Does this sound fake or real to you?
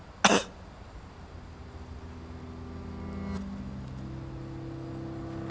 real